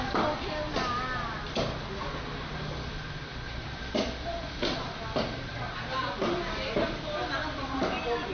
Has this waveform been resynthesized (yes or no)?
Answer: no